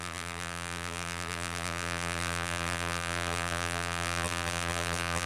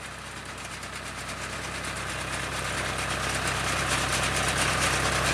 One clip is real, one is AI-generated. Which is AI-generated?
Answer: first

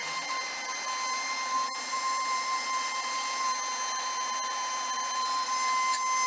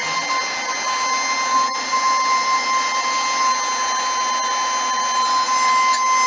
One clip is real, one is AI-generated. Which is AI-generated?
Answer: first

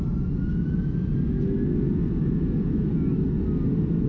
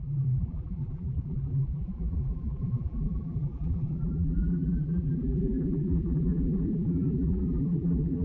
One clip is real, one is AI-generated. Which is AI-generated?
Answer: second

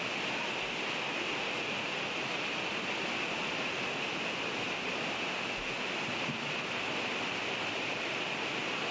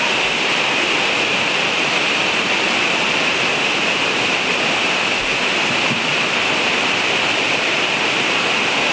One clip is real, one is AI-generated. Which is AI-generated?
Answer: second